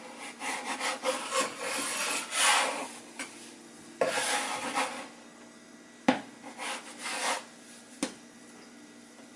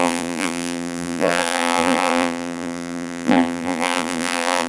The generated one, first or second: second